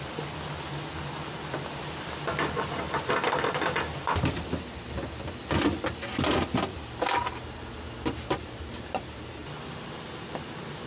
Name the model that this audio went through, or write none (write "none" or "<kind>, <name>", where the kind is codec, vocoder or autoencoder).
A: none